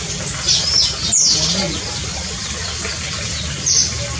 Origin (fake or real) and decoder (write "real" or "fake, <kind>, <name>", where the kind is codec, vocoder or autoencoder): real